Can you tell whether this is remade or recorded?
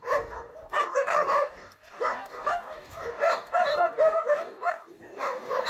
remade